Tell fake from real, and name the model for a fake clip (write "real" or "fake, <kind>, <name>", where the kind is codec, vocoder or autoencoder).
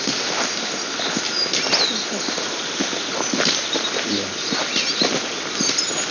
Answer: real